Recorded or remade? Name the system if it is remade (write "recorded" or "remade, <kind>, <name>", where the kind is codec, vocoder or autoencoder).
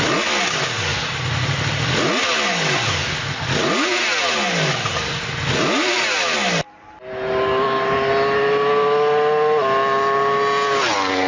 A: recorded